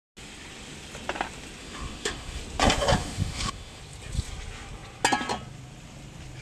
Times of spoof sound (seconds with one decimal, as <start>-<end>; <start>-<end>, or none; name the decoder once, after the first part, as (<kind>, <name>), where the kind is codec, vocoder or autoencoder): 1.6-2.4 (autoencoder, DAC-VAE); 3.0-3.8